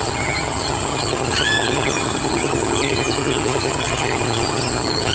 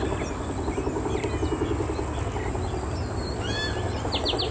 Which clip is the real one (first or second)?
second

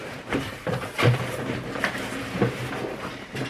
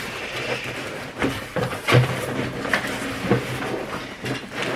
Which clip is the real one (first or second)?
second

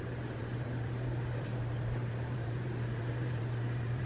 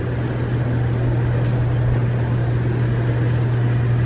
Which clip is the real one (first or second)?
second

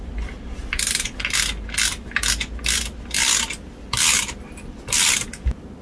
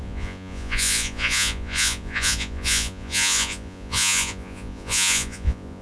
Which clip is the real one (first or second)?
first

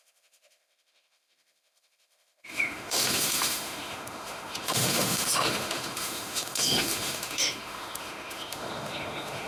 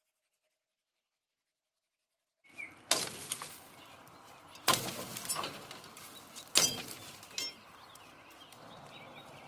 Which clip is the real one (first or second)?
second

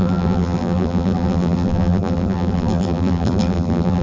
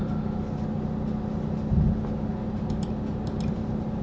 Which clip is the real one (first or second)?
second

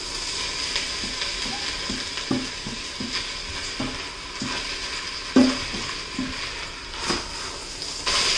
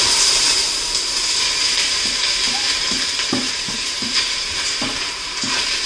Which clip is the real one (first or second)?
first